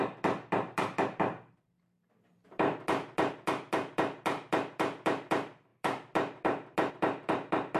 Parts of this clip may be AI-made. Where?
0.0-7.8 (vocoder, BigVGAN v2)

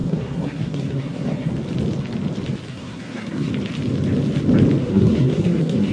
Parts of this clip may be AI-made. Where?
0.0-1.5 (codec, SNAC); 2.7-3.5; 4.8-5.9

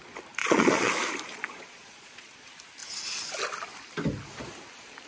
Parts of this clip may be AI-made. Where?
0.4-0.9 (vocoder, Vocos); 1.3-2.3

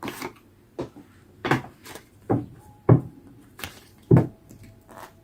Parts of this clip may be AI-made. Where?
1.4-4.5 (vocoder, BigVGAN v2)

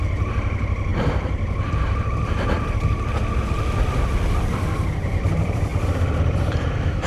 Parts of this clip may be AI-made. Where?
0.0-5.7 (vocoder, BigVGAN v2); 6.2-7.1

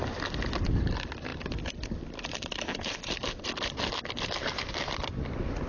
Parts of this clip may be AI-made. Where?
none

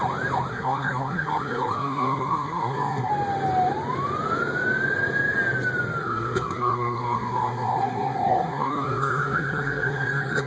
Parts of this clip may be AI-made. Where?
0.5-3.1 (codec, SNAC); 6.0-10.5